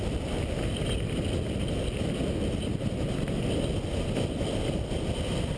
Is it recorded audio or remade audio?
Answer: recorded